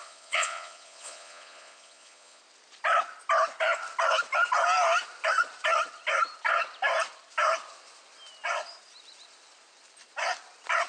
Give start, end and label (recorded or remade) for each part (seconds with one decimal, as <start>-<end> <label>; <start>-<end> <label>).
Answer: 0.0-2.4 remade; 2.4-10.9 recorded